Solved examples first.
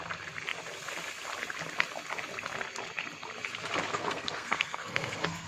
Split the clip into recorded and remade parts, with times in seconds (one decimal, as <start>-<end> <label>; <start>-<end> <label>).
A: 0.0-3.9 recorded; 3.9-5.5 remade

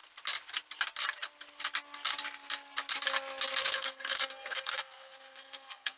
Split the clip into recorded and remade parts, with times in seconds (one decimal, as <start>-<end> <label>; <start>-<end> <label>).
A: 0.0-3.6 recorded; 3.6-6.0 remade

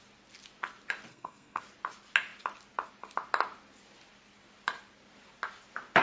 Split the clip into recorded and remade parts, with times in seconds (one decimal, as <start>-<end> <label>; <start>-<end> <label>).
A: 0.0-1.1 recorded; 1.1-1.6 remade; 1.6-6.0 recorded